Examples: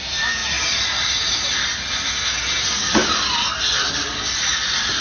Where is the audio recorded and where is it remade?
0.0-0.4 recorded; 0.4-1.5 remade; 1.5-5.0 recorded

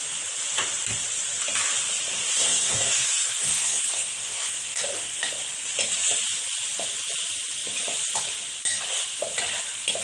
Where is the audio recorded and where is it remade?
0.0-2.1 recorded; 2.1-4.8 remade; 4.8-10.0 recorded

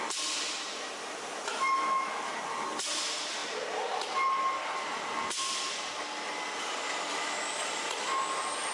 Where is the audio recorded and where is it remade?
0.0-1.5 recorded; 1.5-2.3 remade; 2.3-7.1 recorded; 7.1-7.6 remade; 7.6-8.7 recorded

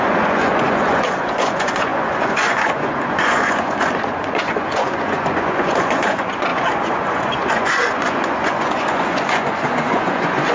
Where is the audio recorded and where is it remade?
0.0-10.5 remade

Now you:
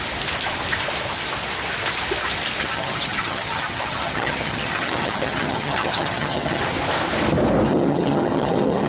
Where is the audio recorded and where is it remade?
0.0-2.6 recorded; 2.6-6.6 remade; 6.6-7.7 recorded; 7.7-8.9 remade

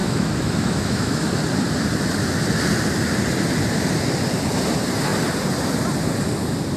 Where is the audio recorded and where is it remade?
0.0-1.3 remade; 1.3-6.8 recorded

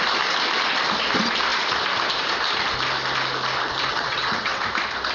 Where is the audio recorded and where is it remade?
0.0-3.9 recorded; 3.9-4.6 remade; 4.6-5.1 recorded